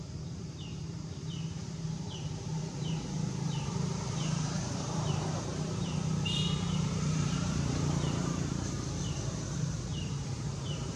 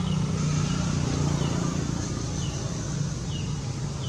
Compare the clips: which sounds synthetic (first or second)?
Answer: first